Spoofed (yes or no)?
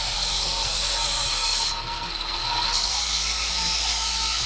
yes